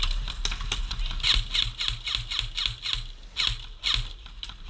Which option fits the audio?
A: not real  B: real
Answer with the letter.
B